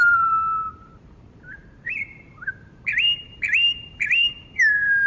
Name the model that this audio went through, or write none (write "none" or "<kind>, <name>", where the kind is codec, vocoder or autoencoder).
vocoder, BigVGAN v2